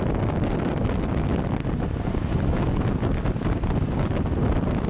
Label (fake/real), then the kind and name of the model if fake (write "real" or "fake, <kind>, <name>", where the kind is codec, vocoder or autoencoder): real